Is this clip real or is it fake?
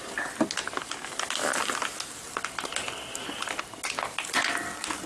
real